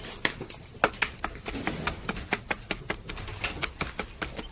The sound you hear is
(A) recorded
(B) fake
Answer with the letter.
A